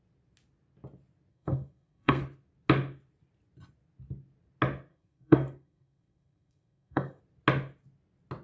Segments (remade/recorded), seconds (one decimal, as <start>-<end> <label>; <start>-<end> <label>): 0.0-1.3 recorded; 1.3-2.2 remade; 2.2-4.9 recorded; 4.9-7.2 remade; 7.2-8.4 recorded